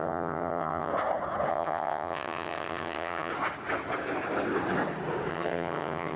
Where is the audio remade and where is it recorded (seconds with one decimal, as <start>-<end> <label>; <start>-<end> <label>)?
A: 0.0-0.9 remade; 0.9-1.5 recorded; 1.5-3.3 remade; 3.3-5.3 recorded; 5.3-6.2 remade